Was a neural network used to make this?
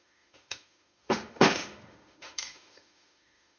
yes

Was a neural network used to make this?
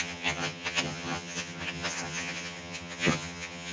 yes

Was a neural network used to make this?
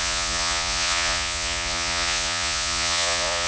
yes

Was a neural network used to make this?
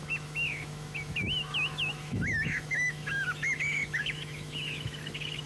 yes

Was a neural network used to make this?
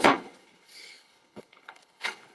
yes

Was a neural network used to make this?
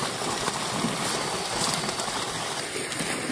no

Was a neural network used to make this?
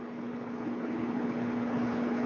yes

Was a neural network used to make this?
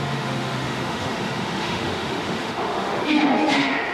yes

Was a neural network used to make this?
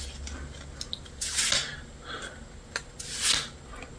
no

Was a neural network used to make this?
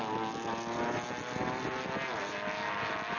no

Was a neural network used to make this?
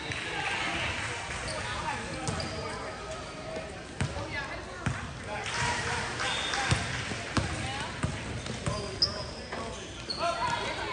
no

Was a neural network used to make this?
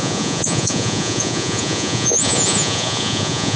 yes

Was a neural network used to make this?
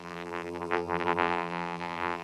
yes